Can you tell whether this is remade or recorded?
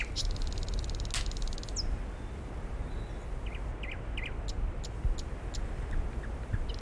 recorded